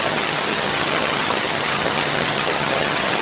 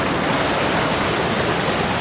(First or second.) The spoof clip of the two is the first